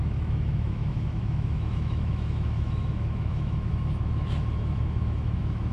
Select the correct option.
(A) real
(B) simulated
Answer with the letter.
B